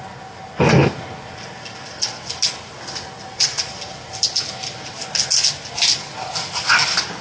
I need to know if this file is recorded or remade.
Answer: recorded